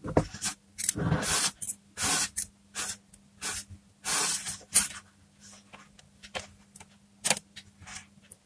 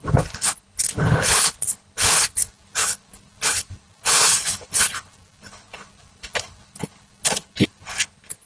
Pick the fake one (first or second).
second